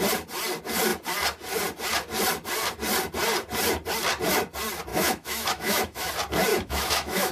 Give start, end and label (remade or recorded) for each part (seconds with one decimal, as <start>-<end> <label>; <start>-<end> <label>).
0.0-4.9 recorded; 4.9-6.1 remade; 6.1-6.5 recorded; 6.5-7.3 remade